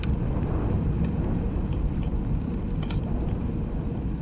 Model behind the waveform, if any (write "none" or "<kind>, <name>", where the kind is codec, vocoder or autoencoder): vocoder, BigVGAN v2